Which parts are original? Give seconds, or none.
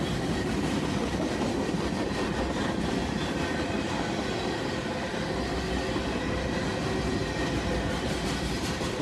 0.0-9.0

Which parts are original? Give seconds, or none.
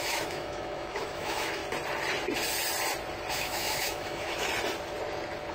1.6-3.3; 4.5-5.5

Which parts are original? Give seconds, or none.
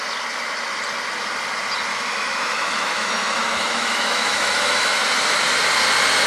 0.0-1.9; 5.0-6.3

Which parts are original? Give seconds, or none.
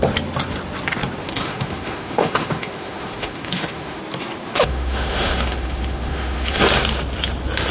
0.0-1.2; 4.0-4.5; 6.6-7.7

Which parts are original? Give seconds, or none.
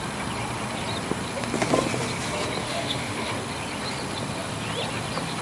0.0-2.6; 3.3-5.4